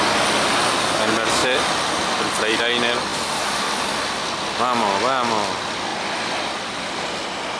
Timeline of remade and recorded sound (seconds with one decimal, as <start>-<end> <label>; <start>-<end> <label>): 0.0-1.4 recorded; 1.4-2.6 remade; 2.6-3.1 recorded; 3.1-3.9 remade; 3.9-5.9 recorded; 5.9-7.0 remade; 7.0-7.6 recorded